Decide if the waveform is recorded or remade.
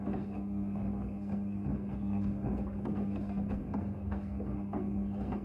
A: remade